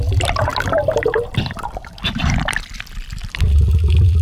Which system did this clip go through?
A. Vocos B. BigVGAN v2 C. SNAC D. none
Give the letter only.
D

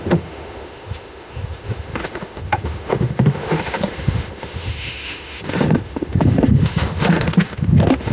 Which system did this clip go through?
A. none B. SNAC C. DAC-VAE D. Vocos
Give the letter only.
C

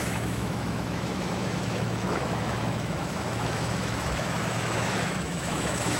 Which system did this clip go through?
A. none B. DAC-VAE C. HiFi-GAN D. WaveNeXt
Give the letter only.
B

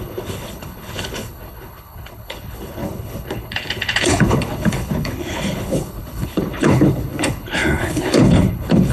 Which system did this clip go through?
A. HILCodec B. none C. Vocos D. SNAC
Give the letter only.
A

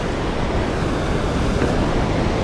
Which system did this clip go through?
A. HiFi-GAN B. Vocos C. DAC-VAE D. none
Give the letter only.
D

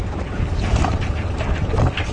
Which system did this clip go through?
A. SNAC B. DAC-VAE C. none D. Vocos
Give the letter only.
C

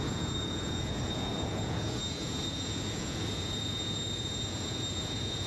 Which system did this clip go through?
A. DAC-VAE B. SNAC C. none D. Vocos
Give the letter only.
D